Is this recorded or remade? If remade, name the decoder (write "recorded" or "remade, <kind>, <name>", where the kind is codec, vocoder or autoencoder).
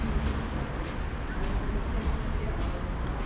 recorded